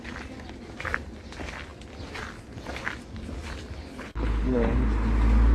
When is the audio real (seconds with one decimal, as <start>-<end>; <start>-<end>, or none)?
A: 0.0-3.9; 4.8-5.5